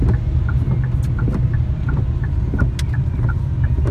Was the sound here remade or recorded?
recorded